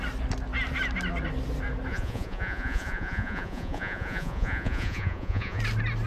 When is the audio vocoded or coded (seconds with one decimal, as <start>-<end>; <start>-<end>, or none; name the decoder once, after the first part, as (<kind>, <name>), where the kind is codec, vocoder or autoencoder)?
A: 1.9-5.6 (vocoder, Vocos)